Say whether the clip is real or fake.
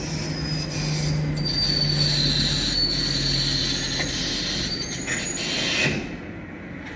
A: real